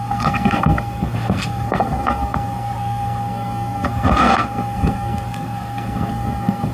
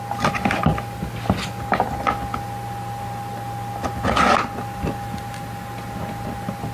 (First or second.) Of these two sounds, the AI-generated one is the first